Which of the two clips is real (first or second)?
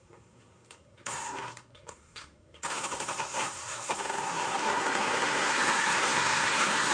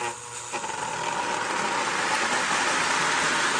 second